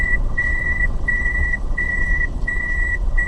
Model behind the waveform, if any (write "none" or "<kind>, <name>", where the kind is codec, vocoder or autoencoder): vocoder, WaveNeXt